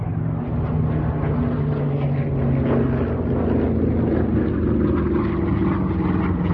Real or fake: real